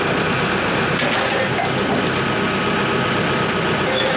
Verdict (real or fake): real